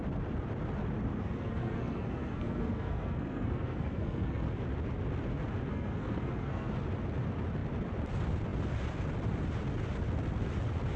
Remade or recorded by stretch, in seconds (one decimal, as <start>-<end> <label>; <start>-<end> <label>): 0.0-1.1 recorded; 1.1-4.5 remade; 4.5-5.7 recorded; 5.7-6.7 remade; 6.7-11.0 recorded